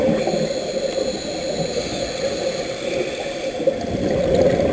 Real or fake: real